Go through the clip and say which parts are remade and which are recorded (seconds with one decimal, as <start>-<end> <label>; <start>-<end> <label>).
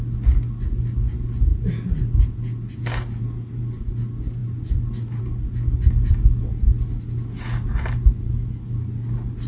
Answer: 0.0-9.5 recorded